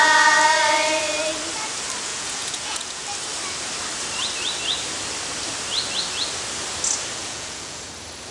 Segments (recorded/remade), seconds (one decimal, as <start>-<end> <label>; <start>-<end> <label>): 0.0-2.1 recorded; 2.1-3.0 remade; 3.0-7.2 recorded; 7.2-7.8 remade; 7.8-8.3 recorded